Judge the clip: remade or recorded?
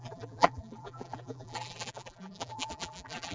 remade